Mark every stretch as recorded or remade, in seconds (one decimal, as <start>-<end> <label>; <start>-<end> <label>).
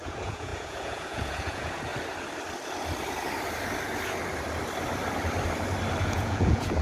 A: 0.0-1.9 remade; 1.9-6.0 recorded; 6.0-6.8 remade